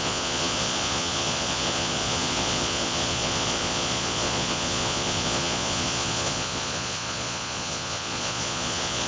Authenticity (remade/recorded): remade